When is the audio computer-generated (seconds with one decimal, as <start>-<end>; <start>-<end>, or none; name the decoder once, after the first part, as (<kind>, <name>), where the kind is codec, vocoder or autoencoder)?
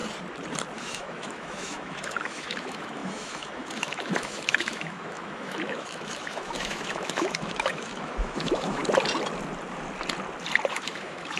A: 0.8-8.8 (autoencoder, DAC-VAE); 10.7-11.4